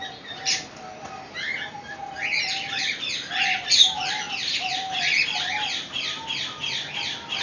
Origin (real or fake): real